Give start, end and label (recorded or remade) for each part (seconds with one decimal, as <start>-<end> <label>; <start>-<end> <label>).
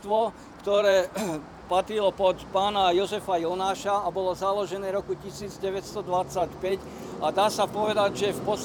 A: 0.0-1.3 remade; 1.3-5.4 recorded; 5.4-5.9 remade; 5.9-6.4 recorded; 6.4-6.9 remade; 6.9-8.6 recorded